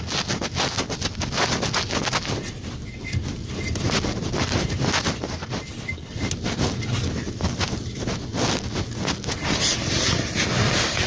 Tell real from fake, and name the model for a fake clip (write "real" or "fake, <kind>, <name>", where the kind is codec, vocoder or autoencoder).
real